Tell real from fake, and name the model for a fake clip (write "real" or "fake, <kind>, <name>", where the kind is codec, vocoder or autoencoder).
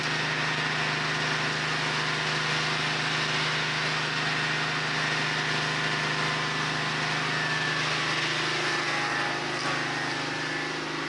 real